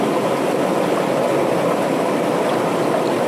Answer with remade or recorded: recorded